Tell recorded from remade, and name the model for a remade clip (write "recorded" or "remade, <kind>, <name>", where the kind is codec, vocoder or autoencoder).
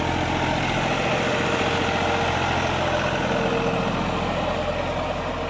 recorded